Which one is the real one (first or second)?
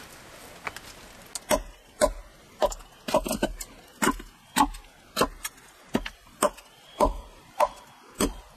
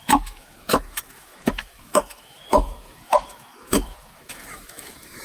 first